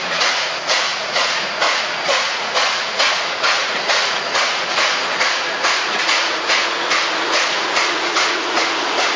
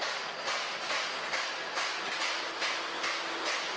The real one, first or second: second